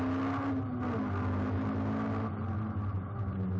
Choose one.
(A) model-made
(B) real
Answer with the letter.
B